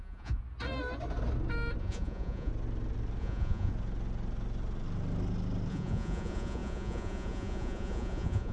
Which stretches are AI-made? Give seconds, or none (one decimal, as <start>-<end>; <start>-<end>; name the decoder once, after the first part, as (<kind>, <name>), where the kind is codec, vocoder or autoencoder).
0.0-0.4 (vocoder, Vocos); 1.8-2.5; 3.2-3.7; 5.7-8.5